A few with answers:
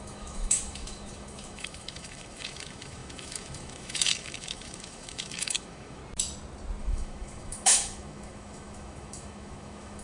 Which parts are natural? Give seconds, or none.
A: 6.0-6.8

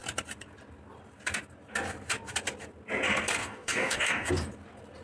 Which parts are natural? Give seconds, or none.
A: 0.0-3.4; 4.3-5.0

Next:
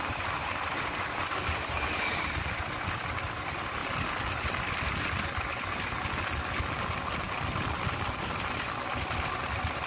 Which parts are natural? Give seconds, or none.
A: 3.8-7.2